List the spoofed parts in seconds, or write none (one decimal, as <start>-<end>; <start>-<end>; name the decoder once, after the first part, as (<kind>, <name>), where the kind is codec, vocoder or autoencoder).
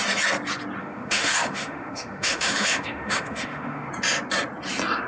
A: 0.8-3.9 (autoencoder, DAC-VAE)